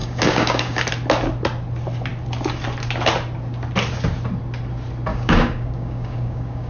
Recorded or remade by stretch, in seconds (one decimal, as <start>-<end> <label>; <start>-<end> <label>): 0.0-0.8 remade; 0.8-5.1 recorded; 5.1-6.7 remade